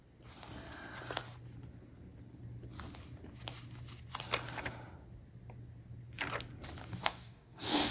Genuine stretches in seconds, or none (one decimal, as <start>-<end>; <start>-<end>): 0.0-7.0